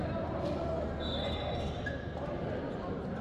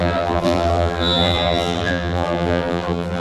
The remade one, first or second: second